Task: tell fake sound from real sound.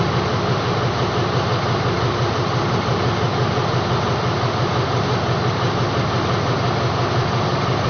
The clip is real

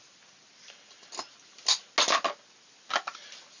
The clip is real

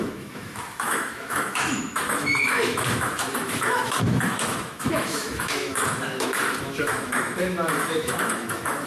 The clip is fake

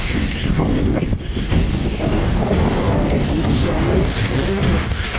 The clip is fake